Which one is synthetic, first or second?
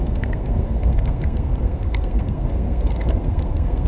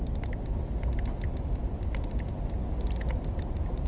first